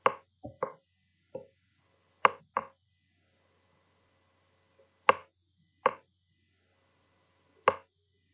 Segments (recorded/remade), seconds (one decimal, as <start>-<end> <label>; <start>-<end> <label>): 0.0-8.3 recorded